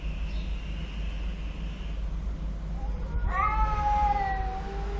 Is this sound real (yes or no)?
yes